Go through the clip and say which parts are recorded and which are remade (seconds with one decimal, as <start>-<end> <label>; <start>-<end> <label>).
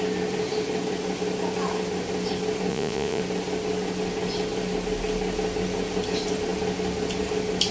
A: 0.0-2.7 recorded; 2.7-3.2 remade; 3.2-7.7 recorded